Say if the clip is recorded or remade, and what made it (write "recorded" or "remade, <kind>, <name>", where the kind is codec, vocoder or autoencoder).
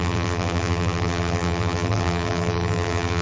remade, vocoder, BigVGAN v2